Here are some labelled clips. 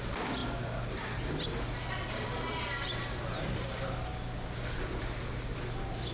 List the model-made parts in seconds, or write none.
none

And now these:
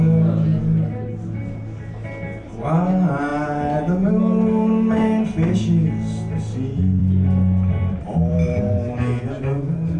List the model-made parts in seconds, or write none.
7.0-8.6 (vocoder, BigVGAN v2)

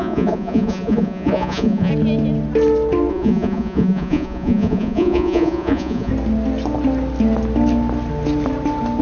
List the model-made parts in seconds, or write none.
0.0-1.9 (vocoder, Vocos); 3.1-6.1

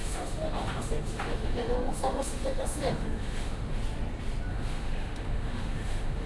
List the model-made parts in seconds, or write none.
0.0-3.8 (autoencoder, DAC-VAE); 4.5-6.3